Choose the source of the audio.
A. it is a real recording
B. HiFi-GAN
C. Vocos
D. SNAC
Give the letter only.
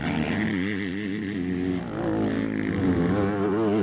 A